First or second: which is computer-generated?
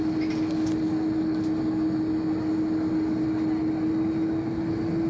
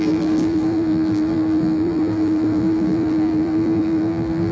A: second